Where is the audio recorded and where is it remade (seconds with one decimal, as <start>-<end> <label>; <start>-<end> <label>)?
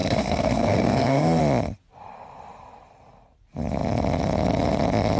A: 0.0-1.4 remade; 1.4-5.2 recorded